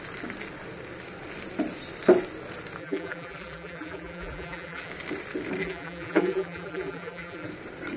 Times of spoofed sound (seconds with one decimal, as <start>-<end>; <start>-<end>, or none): 2.8-4.9; 5.6-7.5